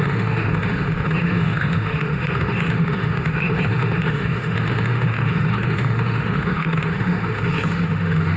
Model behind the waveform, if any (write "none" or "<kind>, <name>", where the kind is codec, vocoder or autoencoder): autoencoder, DAC-VAE